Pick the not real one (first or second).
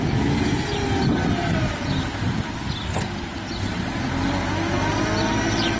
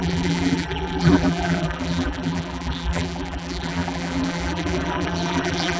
second